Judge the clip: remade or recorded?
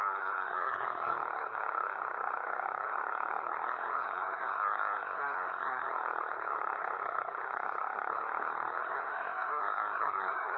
remade